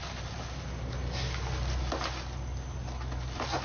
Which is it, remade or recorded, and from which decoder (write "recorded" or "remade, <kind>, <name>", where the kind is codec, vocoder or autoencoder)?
recorded